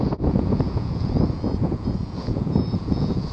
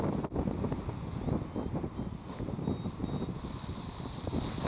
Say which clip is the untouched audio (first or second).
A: second